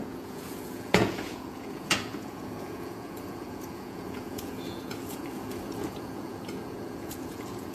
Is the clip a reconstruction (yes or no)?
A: yes